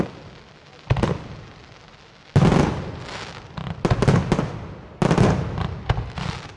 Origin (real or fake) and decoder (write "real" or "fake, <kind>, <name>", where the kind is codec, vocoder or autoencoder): real